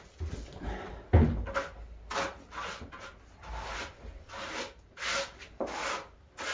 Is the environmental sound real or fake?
real